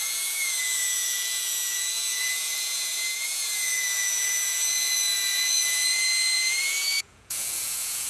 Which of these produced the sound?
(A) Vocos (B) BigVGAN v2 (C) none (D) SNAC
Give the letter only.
A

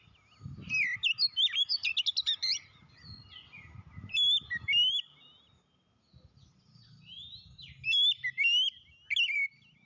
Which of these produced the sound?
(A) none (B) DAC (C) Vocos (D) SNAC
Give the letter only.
A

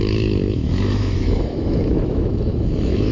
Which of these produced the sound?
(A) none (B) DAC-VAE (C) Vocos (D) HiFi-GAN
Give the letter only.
B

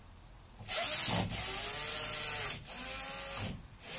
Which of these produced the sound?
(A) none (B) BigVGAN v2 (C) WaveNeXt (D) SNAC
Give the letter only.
A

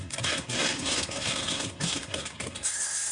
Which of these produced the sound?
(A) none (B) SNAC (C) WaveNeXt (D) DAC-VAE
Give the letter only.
B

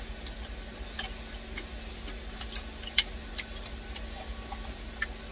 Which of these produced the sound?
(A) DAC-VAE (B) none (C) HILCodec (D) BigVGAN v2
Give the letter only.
B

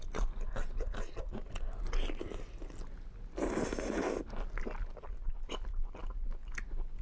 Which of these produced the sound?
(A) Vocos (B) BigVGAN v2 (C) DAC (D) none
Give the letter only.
D